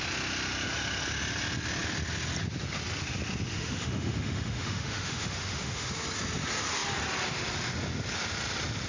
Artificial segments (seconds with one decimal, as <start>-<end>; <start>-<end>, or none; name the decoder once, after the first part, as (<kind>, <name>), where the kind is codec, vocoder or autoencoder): 3.5-5.9 (autoencoder, DAC-VAE)